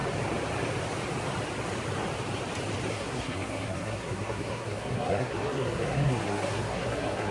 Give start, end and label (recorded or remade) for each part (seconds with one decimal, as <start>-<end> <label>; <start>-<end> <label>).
0.0-2.9 recorded; 2.9-7.3 remade